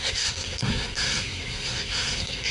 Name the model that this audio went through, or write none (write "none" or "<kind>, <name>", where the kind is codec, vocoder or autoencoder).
codec, SNAC